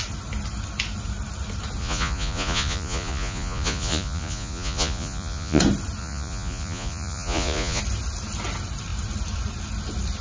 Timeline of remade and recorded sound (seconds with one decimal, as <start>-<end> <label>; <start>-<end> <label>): 0.0-1.8 recorded; 1.8-5.6 remade; 5.6-6.0 recorded; 6.0-7.8 remade; 7.8-10.2 recorded